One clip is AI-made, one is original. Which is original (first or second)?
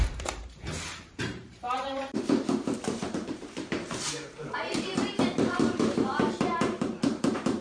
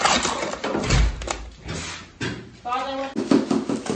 second